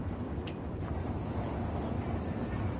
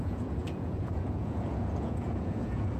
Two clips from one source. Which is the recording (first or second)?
first